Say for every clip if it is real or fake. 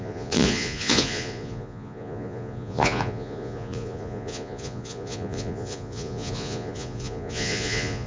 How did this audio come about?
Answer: fake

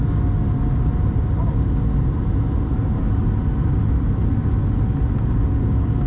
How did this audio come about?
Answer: real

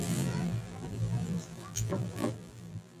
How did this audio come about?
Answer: fake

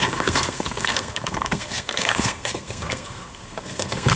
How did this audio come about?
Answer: fake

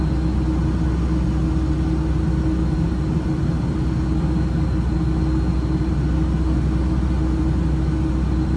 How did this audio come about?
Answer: real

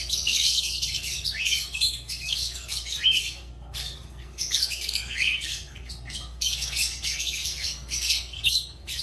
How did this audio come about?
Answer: fake